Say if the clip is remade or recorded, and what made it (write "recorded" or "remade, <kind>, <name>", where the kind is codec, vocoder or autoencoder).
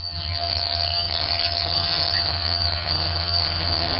remade, vocoder, HiFi-GAN